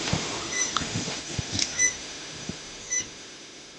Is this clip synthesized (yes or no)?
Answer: yes